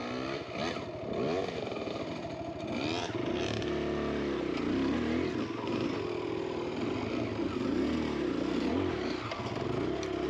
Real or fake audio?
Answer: real